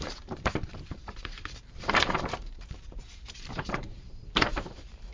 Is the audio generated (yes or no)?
yes